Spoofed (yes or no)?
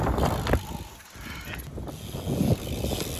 no